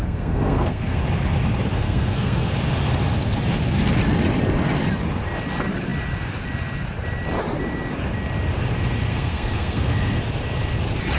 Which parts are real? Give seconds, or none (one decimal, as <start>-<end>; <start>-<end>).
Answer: 1.0-1.7; 2.5-9.1; 10.2-11.2